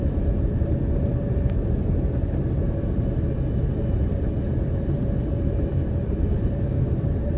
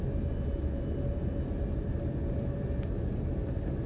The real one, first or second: second